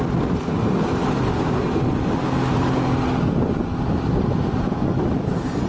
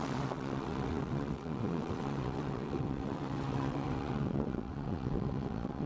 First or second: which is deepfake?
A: second